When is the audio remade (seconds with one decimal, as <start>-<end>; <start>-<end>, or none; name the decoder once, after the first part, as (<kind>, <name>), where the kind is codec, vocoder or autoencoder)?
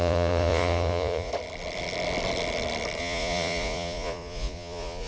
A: 0.0-1.3 (vocoder, Vocos); 3.0-5.1